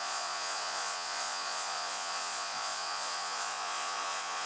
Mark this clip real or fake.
fake